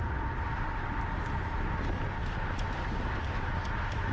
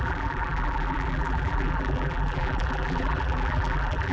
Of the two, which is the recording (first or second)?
first